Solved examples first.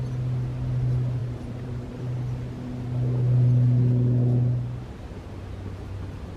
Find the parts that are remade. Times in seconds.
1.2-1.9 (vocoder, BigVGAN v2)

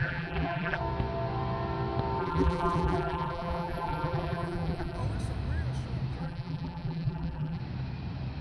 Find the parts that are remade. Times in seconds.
0.0-0.8 (vocoder, BigVGAN v2); 2.2-5.0; 6.2-7.6

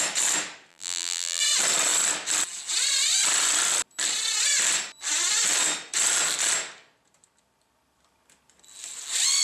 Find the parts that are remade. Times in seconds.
0.7-1.4 (vocoder, BigVGAN v2)

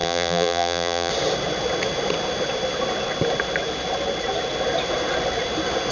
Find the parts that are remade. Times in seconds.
0.0-1.1 (vocoder, BigVGAN v2)